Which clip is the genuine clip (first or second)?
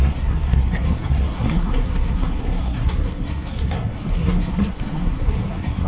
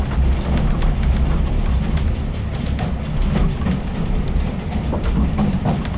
second